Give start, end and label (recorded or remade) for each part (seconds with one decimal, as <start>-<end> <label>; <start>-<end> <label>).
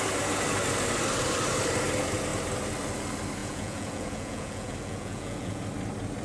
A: 0.0-3.4 recorded; 3.4-5.6 remade; 5.6-6.2 recorded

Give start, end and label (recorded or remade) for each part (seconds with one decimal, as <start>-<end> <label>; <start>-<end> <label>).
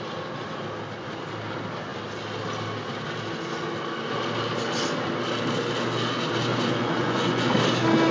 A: 0.0-6.5 recorded; 6.5-7.5 remade; 7.5-8.1 recorded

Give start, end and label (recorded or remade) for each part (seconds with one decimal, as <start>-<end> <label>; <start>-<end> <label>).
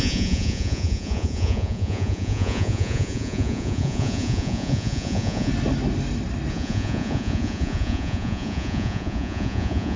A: 0.0-5.5 remade; 5.5-6.5 recorded; 6.5-10.0 remade